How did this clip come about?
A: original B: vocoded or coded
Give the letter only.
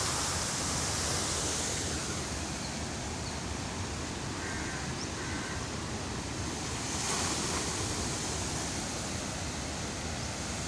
A